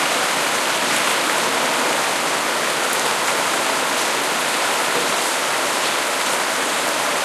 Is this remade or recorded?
recorded